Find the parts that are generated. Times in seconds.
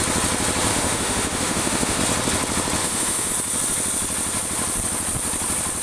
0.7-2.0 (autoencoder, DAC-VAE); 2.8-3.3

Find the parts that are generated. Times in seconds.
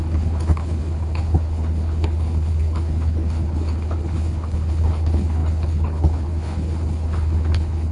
0.0-7.9 (codec, HILCodec)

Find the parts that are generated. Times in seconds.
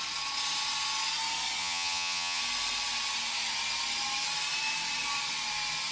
1.6-2.4 (vocoder, HiFi-GAN)